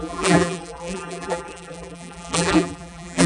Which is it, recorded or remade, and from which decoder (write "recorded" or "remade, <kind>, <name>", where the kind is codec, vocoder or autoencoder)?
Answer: remade, vocoder, BigVGAN v2